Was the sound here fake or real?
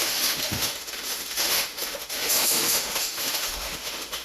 fake